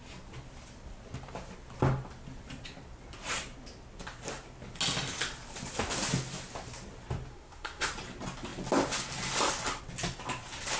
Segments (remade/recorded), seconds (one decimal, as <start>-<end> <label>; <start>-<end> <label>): 0.0-7.3 recorded; 7.3-7.9 remade; 7.9-10.8 recorded

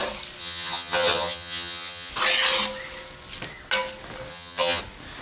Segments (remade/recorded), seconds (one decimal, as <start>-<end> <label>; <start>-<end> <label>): 0.0-0.4 recorded; 0.4-2.1 remade; 2.1-4.3 recorded; 4.3-4.8 remade; 4.8-5.2 recorded

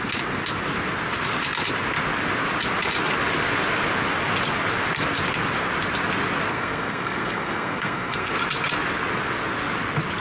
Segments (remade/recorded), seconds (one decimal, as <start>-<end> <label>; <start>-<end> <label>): 0.0-6.5 recorded; 6.5-8.3 remade; 8.3-10.2 recorded

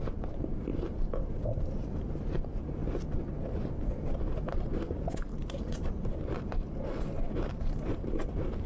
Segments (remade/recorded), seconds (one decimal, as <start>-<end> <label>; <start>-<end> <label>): 0.0-2.8 remade; 2.8-3.5 recorded; 3.5-8.7 remade

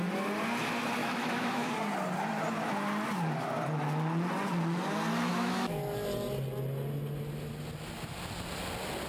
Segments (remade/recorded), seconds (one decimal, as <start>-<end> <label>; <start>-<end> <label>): 0.0-1.0 recorded; 1.0-1.7 remade; 1.7-5.3 recorded; 5.3-5.8 remade; 5.8-9.1 recorded

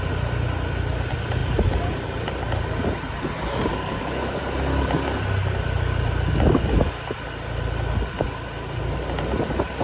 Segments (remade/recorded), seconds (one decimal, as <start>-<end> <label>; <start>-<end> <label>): 0.0-3.7 recorded; 3.7-4.4 remade; 4.4-9.8 recorded

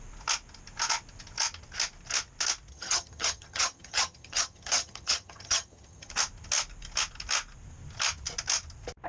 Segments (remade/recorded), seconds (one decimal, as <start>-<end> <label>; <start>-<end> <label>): 0.0-2.7 recorded; 2.7-6.1 remade; 6.1-9.1 recorded